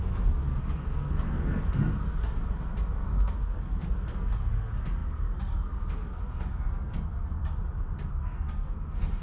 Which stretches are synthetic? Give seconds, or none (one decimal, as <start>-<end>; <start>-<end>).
0.0-7.4; 8.0-9.2